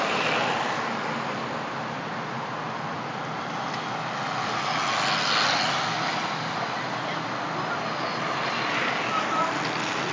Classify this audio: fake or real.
real